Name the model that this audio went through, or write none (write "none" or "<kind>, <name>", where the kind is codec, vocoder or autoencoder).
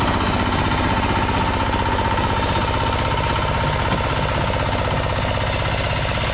none